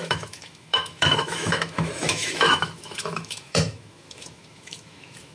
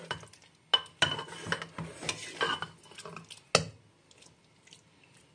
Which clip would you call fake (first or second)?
first